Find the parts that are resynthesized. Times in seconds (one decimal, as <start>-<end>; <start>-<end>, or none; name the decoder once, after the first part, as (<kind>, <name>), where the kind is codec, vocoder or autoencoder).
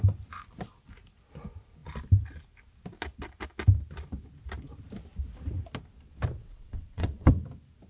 6.4-7.3 (vocoder, WaveNeXt)